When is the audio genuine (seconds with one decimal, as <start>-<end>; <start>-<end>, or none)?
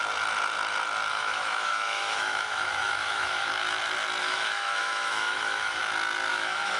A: 0.0-1.1; 3.5-4.2; 5.8-6.3